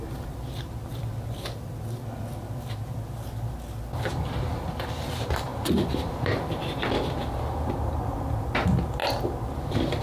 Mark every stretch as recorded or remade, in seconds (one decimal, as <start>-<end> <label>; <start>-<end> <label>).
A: 0.0-9.0 remade; 9.0-10.0 recorded